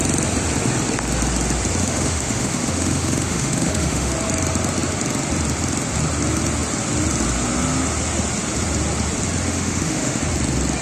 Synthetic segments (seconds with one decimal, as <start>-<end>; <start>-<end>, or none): 1.8-4.1; 9.5-10.2